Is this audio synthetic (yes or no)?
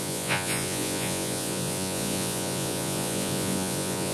yes